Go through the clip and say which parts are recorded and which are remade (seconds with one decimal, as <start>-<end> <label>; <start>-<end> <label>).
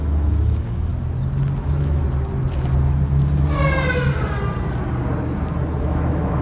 0.0-0.9 remade; 0.9-1.6 recorded; 1.6-2.0 remade; 2.0-5.8 recorded; 5.8-6.4 remade